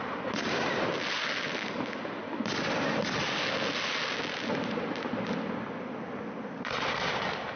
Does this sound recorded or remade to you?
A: recorded